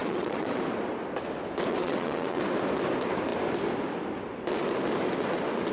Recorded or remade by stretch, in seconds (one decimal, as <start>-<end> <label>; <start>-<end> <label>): 0.0-0.6 remade; 0.6-1.7 recorded; 1.7-2.4 remade; 2.4-5.7 recorded